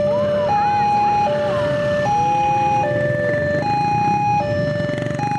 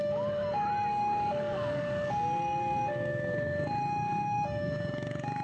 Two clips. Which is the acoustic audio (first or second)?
first